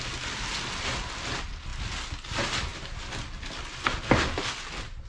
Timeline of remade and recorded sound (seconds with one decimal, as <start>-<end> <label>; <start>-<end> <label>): 0.0-5.1 recorded